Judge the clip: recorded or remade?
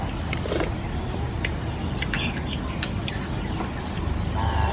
recorded